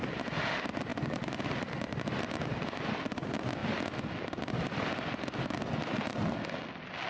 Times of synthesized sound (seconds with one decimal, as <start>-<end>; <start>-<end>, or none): none